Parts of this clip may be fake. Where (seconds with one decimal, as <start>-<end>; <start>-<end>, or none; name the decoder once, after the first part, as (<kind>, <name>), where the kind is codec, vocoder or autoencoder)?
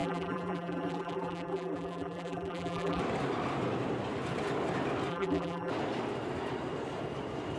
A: 0.0-3.0 (vocoder, BigVGAN v2); 5.1-5.7